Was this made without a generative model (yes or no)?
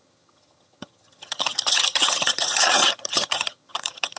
no